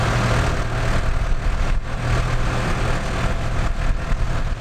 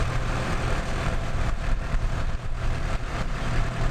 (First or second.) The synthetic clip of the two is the second